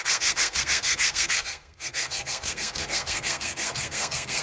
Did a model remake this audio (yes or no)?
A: yes